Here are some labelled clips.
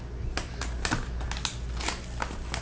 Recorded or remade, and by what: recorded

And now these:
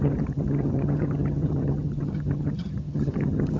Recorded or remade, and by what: remade, vocoder, HiFi-GAN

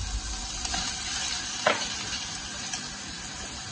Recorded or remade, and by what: recorded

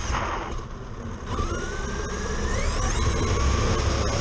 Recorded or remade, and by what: recorded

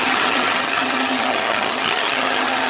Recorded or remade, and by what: remade, vocoder, HiFi-GAN